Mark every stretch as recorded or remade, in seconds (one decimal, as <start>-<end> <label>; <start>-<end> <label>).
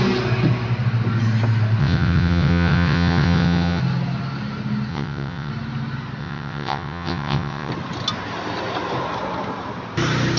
0.0-1.8 recorded; 1.8-3.8 remade; 3.8-4.9 recorded; 4.9-5.5 remade; 5.5-6.2 recorded; 6.2-7.7 remade; 7.7-10.4 recorded